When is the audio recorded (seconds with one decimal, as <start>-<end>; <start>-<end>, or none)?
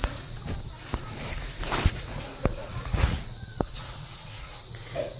0.4-1.9